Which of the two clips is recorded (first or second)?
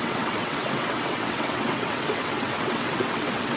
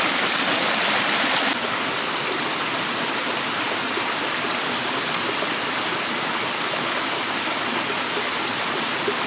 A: second